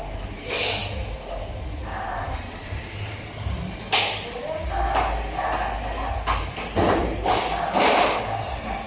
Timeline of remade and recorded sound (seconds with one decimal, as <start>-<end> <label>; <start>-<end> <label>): 0.0-8.9 recorded